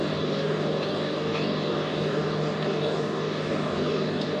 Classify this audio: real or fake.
fake